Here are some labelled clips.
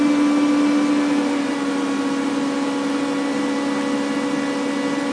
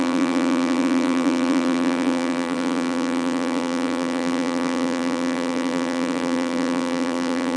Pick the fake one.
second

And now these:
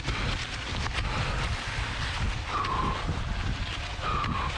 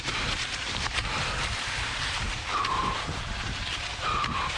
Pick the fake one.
second